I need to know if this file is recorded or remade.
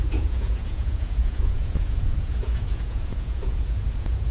remade